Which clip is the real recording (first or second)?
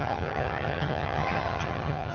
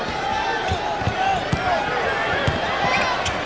second